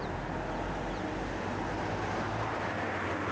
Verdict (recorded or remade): recorded